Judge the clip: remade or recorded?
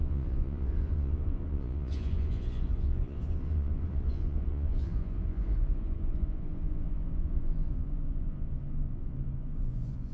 remade